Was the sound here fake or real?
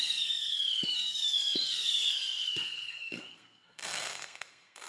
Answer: fake